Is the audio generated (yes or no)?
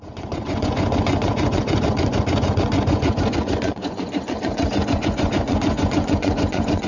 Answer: yes